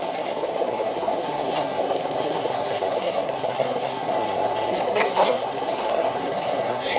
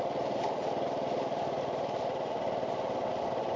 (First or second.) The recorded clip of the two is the second